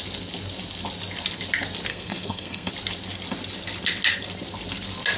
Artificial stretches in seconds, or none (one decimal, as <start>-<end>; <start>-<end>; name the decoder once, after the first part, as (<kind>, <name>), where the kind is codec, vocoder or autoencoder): 1.9-2.7 (codec, SNAC)